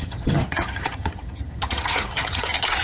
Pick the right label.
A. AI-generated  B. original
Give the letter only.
A